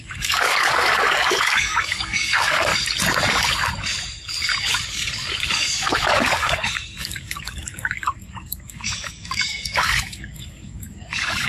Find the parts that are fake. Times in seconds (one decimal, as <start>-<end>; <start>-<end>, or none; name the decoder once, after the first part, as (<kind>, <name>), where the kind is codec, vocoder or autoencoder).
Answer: 0.0-2.7 (codec, DAC); 4.6-11.5